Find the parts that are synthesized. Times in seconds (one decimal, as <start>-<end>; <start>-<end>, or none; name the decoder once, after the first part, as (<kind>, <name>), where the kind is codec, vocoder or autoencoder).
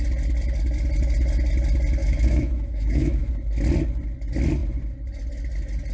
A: 2.0-3.3 (autoencoder, DAC-VAE)